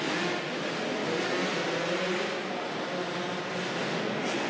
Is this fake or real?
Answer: real